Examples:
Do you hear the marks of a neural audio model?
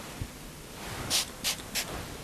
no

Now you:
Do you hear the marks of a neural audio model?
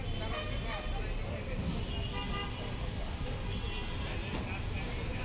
no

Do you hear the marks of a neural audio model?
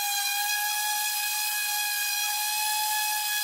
no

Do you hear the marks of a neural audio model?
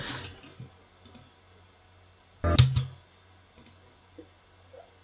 no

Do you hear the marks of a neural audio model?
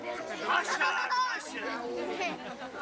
no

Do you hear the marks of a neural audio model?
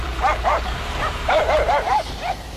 yes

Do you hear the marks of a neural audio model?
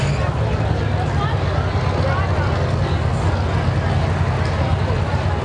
no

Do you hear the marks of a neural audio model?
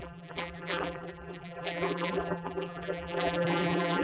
yes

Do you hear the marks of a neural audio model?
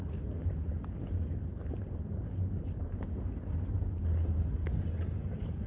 no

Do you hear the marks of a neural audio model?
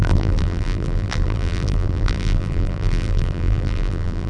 yes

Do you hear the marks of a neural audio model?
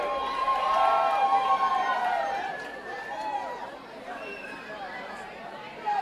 yes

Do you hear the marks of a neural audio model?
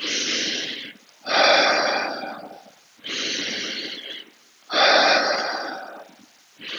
no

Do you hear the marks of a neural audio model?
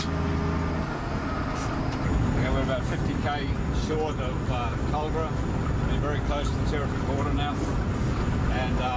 no